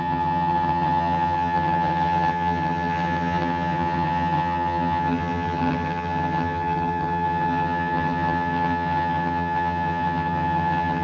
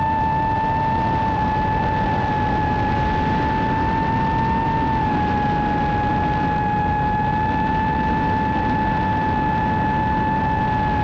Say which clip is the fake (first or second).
first